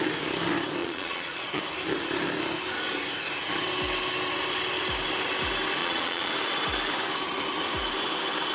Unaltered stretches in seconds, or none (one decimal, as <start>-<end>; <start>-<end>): 0.0-0.8; 1.6-5.8; 6.3-8.5